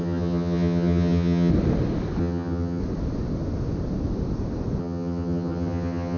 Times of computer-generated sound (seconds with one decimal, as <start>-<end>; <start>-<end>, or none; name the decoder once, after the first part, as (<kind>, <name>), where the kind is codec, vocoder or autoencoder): 0.0-1.5 (vocoder, HiFi-GAN); 2.2-2.8; 4.8-6.2